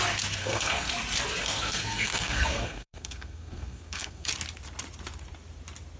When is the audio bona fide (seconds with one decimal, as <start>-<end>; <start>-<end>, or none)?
0.0-0.4; 0.9-1.4; 4.3-6.0